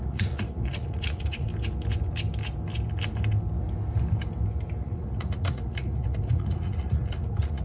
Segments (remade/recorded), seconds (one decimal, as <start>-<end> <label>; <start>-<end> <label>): 0.0-1.5 remade; 1.5-4.8 recorded; 4.8-7.6 remade

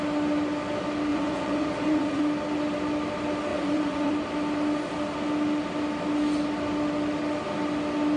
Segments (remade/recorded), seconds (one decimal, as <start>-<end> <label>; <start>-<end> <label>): 0.0-1.1 recorded; 1.1-2.2 remade; 2.2-3.5 recorded; 3.5-4.1 remade; 4.1-8.2 recorded